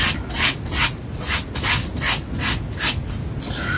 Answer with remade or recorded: recorded